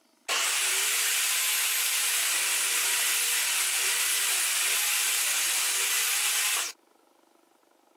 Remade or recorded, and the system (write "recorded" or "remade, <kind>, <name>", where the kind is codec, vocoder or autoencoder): recorded